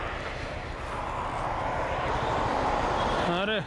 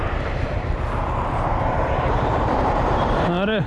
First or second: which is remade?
second